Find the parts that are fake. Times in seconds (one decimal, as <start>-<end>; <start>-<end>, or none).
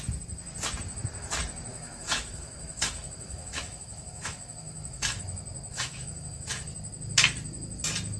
1.7-5.2; 5.7-6.6